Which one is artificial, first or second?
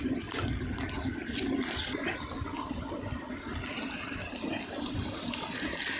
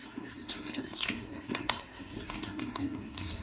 second